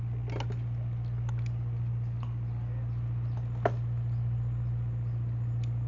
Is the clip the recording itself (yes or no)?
yes